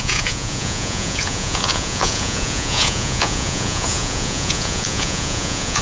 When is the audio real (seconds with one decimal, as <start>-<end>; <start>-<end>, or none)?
none